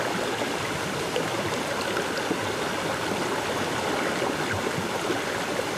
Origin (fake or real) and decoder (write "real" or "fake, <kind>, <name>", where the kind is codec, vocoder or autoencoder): real